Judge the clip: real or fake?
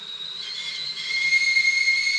real